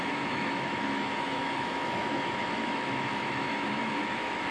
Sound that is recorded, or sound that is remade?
remade